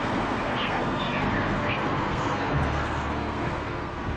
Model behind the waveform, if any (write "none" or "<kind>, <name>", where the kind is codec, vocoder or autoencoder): codec, SNAC